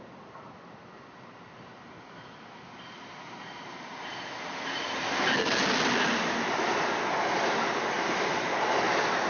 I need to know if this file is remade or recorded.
recorded